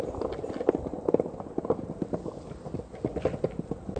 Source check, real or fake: real